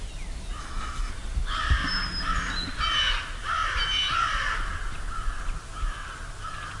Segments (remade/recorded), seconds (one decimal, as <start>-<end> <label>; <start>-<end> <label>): 0.0-0.6 recorded; 0.6-1.1 remade; 1.1-6.8 recorded